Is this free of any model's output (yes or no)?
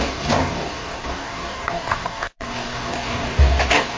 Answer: no